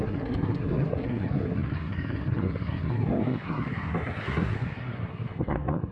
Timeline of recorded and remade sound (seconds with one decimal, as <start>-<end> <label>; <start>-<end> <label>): 0.0-5.9 remade